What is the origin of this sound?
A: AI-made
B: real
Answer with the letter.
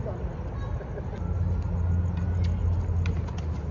B